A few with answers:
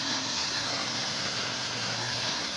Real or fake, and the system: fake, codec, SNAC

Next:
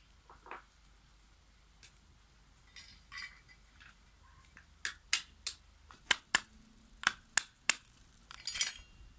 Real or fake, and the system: real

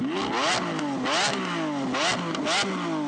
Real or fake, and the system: real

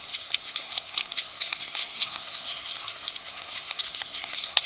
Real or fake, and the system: fake, codec, SNAC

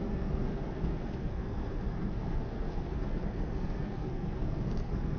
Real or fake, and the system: fake, codec, SNAC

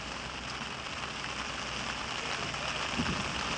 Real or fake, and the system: real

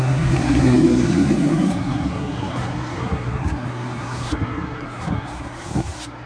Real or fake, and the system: fake, codec, SNAC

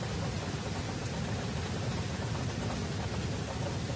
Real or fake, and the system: real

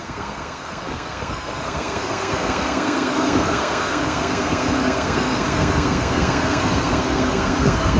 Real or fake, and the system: fake, codec, SNAC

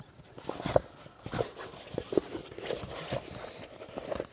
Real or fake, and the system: real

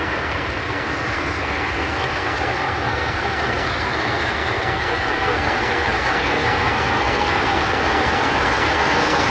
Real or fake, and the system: fake, codec, SNAC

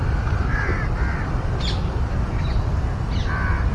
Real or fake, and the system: real